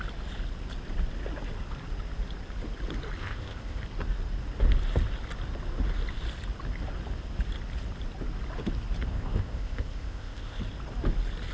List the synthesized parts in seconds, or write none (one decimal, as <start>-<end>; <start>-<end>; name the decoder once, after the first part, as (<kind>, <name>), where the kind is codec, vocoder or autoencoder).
3.2-3.8 (codec, ZipCodec); 9.1-10.6